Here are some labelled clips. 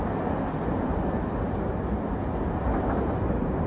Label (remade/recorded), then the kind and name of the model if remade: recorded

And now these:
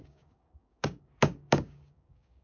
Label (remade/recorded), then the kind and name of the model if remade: remade, codec, DAC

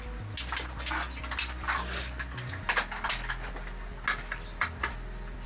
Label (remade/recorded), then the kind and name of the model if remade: recorded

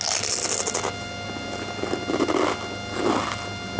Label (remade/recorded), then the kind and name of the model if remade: recorded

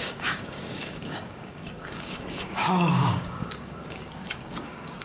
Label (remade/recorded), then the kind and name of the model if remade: remade, codec, DAC